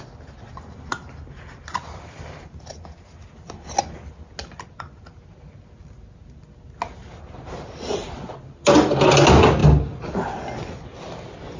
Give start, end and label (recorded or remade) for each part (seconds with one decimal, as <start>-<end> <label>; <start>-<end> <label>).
0.0-11.6 recorded